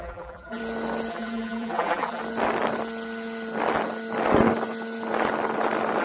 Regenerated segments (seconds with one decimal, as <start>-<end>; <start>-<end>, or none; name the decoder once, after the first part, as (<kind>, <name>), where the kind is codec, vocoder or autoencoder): 0.0-0.6 (vocoder, BigVGAN v2); 1.1-2.2

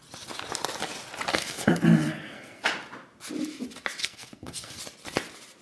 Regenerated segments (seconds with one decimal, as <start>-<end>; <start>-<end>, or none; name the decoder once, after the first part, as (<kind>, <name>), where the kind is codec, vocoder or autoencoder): 1.3-2.7 (codec, SNAC); 4.0-4.8